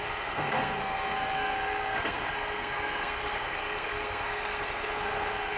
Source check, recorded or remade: remade